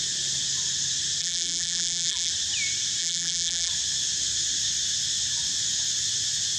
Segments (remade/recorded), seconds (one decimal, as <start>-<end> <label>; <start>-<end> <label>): 0.0-1.2 recorded; 1.2-2.3 remade; 2.3-3.0 recorded; 3.0-3.7 remade; 3.7-6.6 recorded